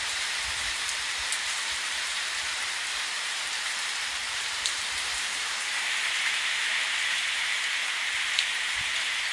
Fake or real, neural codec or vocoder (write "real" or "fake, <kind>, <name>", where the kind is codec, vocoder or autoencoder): fake, vocoder, BigVGAN v2